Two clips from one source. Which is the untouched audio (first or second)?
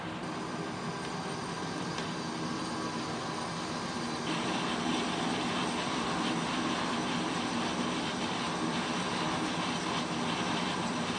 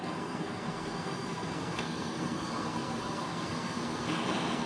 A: first